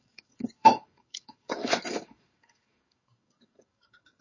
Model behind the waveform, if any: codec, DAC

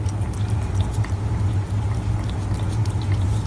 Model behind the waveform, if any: none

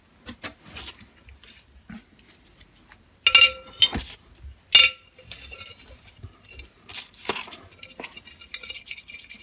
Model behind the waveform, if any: none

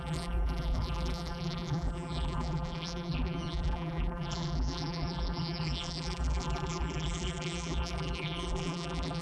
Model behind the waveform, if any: vocoder, BigVGAN v2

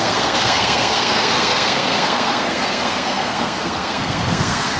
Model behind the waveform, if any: codec, SNAC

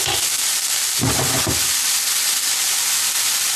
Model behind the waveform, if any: none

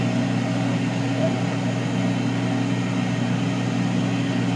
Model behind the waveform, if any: none